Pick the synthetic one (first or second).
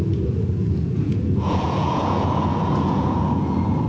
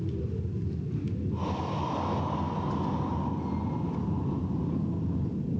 first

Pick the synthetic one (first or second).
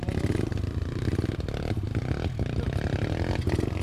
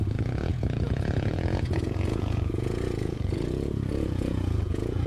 second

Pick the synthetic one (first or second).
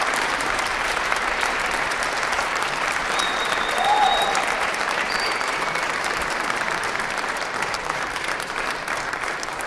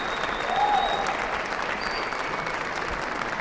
first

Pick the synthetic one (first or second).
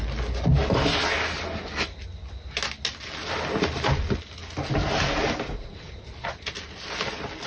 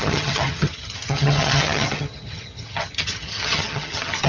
second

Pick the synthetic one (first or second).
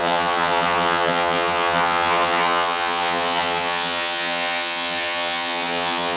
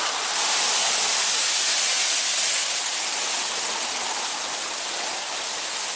first